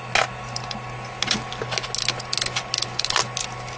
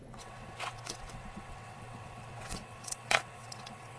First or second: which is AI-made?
second